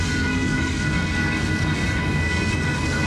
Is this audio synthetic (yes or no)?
yes